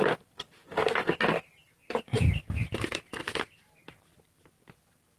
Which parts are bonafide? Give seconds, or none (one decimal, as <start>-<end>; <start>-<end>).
0.0-5.2